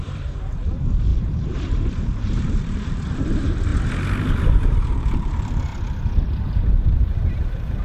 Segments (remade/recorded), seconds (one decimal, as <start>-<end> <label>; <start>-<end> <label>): 0.0-3.7 remade; 3.7-4.3 recorded; 4.3-5.7 remade; 5.7-6.4 recorded; 6.4-7.8 remade